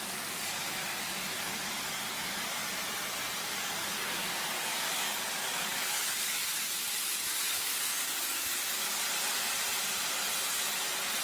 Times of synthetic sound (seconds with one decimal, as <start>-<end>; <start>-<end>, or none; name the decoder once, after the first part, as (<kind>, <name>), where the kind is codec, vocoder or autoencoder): 0.0-2.6 (codec, DAC); 3.4-9.0